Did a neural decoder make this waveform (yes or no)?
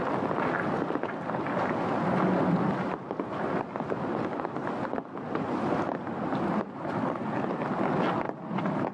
no